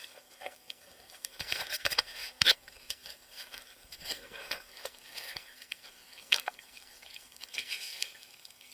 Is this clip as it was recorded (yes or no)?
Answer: no